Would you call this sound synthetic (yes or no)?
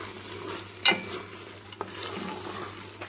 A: no